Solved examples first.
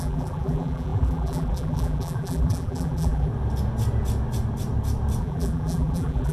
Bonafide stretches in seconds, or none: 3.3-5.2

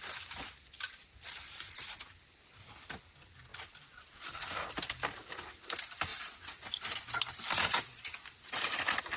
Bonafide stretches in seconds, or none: 6.1-7.3